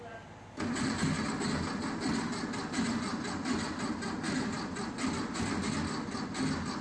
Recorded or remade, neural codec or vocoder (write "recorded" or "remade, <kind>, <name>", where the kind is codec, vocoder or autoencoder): recorded